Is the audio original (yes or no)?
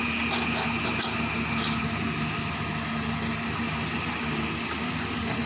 yes